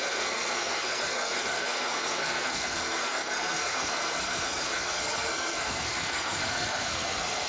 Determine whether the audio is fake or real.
fake